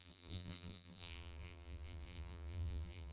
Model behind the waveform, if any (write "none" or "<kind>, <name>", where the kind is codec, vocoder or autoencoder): vocoder, BigVGAN v2